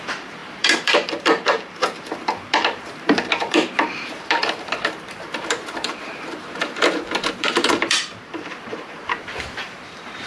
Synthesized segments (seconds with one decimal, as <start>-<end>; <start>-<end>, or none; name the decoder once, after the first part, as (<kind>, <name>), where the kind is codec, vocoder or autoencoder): 0.0-10.3 (vocoder, BigVGAN v2)